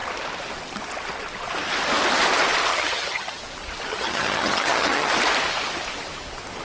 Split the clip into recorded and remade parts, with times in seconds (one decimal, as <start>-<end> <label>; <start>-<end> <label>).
0.0-2.7 recorded; 2.7-3.4 remade; 3.4-3.9 recorded; 3.9-5.1 remade; 5.1-6.6 recorded